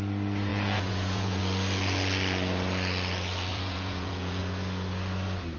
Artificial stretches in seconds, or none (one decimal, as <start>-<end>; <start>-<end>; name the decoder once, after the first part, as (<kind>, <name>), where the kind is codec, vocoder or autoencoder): 0.5-1.4 (vocoder, Vocos); 3.5-4.4